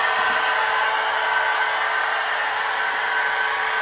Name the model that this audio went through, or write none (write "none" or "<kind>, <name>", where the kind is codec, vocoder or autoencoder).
none